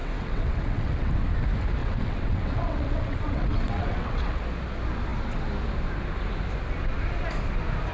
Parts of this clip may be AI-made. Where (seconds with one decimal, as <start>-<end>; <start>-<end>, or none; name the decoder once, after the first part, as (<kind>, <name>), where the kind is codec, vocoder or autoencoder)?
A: 0.0-1.1 (vocoder, WaveNeXt); 1.8-4.4